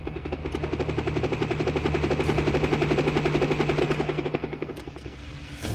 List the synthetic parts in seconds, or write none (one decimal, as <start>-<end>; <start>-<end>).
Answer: 0.0-0.4; 3.8-5.7